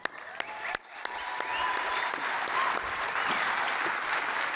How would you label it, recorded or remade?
recorded